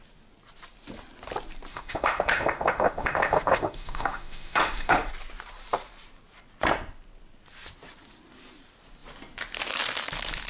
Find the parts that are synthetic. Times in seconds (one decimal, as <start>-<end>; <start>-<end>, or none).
1.7-5.1